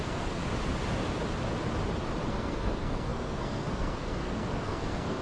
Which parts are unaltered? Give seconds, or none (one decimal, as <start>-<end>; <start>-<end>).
0.4-2.3